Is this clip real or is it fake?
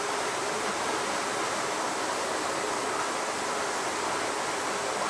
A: real